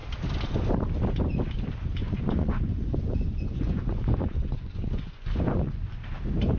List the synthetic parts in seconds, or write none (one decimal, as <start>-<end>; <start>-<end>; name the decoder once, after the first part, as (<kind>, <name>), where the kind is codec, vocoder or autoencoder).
2.0-6.0 (vocoder, Vocos)